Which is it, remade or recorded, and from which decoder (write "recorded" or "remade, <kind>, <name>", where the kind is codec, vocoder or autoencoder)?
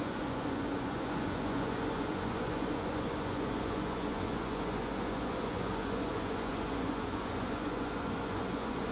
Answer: remade, vocoder, Vocos